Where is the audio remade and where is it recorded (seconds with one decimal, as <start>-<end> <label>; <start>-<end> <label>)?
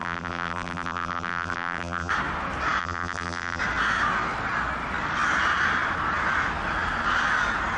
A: 0.0-2.1 remade; 2.1-2.8 recorded; 2.8-3.6 remade; 3.6-7.8 recorded